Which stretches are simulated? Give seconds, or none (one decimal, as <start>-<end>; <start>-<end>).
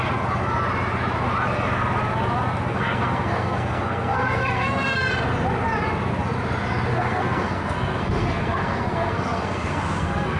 2.7-5.1; 6.9-10.4